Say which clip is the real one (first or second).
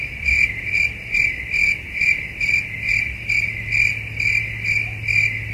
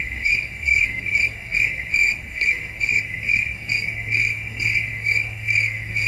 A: first